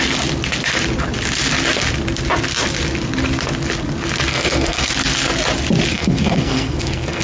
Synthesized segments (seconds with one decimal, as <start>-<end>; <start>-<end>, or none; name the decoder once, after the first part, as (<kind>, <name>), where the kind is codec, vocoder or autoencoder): 4.3-4.9 (codec, SNAC); 5.9-7.2